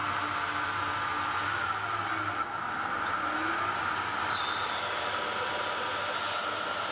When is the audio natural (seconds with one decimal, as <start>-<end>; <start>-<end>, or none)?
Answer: 0.0-6.9